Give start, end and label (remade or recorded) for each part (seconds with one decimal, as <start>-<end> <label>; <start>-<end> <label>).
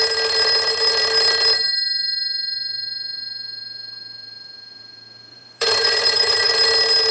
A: 0.0-5.3 recorded; 5.3-6.5 remade; 6.5-7.1 recorded